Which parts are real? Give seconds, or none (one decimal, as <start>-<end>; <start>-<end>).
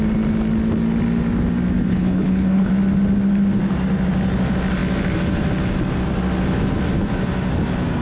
0.0-1.9; 2.7-8.0